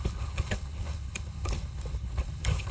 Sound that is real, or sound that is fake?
fake